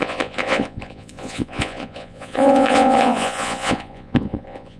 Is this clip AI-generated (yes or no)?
yes